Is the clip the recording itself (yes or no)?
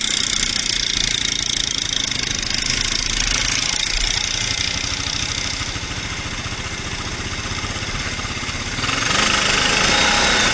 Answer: yes